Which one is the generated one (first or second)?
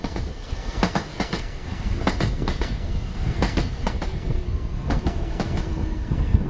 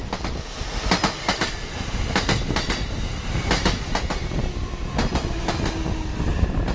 first